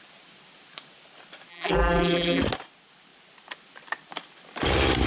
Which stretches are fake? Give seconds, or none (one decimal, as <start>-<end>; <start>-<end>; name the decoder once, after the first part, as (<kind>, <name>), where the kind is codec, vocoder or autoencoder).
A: 1.5-2.4 (vocoder, BigVGAN v2)